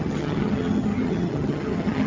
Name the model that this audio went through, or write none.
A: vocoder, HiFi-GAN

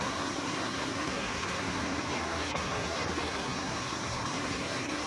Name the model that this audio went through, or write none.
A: codec, SNAC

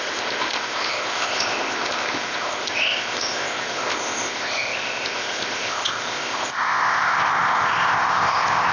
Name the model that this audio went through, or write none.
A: codec, ZipCodec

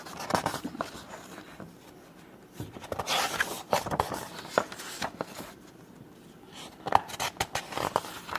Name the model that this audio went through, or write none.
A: none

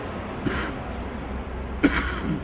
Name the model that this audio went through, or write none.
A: none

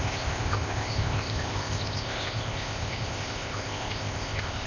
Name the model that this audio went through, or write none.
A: codec, ZipCodec